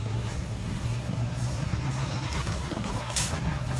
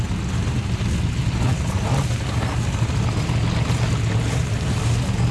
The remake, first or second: first